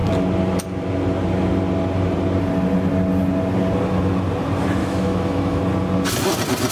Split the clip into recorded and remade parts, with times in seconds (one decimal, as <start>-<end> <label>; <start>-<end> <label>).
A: 0.0-4.8 recorded; 4.8-5.6 remade; 5.6-6.7 recorded